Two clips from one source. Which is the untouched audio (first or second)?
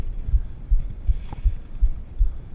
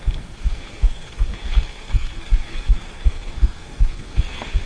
first